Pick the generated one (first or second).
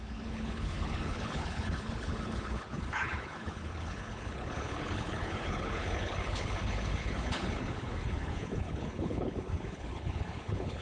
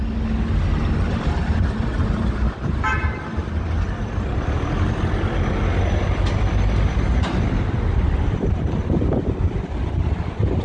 first